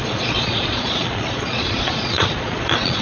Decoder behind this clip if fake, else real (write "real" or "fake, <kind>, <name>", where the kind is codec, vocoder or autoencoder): fake, vocoder, Vocos